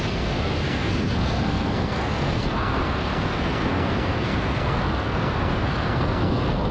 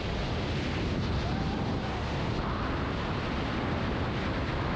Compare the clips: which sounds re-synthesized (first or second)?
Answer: first